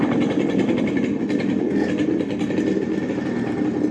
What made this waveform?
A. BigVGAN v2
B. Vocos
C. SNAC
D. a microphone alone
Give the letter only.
D